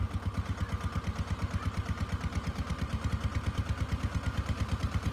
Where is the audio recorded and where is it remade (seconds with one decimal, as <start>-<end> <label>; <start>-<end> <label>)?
0.0-5.1 recorded